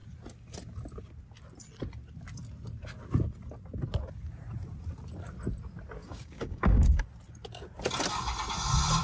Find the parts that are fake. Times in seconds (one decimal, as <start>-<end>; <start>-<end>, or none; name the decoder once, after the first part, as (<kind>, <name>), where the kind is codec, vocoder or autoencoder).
6.0-7.0 (codec, DAC)